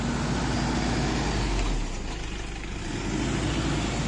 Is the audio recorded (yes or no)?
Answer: yes